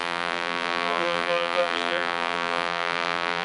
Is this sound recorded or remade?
remade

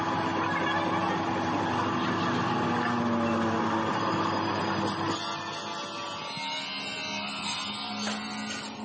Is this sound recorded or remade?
recorded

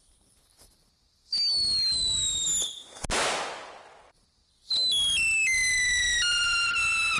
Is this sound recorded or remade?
recorded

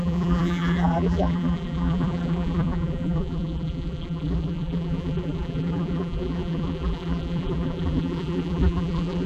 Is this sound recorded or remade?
remade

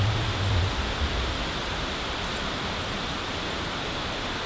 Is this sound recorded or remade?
remade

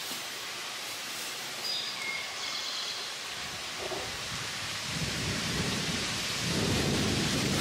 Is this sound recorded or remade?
remade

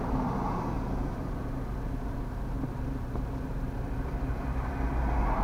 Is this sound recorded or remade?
remade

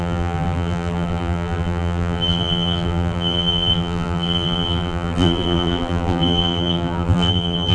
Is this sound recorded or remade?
remade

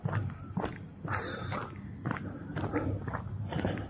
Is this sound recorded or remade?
remade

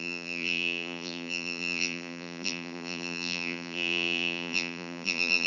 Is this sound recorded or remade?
remade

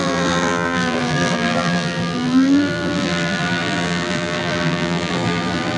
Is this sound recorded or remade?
remade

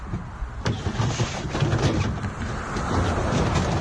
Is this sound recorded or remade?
recorded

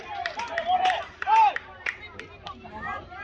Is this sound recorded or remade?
remade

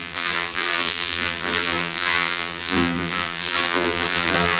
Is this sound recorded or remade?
remade